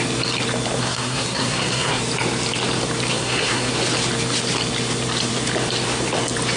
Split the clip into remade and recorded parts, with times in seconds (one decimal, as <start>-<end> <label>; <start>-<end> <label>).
0.0-0.8 recorded; 0.8-2.0 remade; 2.0-3.1 recorded; 3.1-3.7 remade; 3.7-6.6 recorded